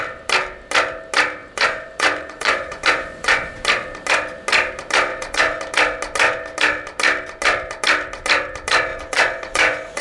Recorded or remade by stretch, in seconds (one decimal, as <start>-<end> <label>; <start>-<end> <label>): 0.0-1.4 recorded; 1.4-3.5 remade; 3.5-5.1 recorded; 5.1-5.6 remade; 5.6-8.9 recorded; 8.9-10.0 remade